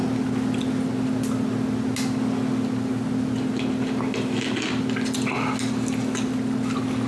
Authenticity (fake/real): real